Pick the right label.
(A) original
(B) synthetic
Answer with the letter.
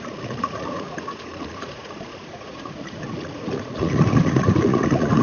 B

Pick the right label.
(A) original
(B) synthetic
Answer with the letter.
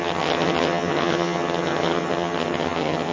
B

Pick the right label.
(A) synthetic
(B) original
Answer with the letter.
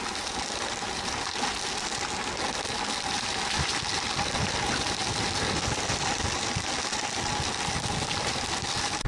B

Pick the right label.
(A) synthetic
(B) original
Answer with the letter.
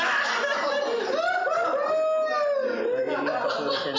B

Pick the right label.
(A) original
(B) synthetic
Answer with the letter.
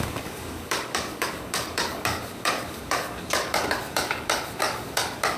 B